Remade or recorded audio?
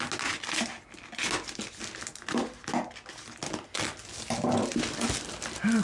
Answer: recorded